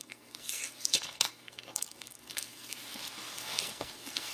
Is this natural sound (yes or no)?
no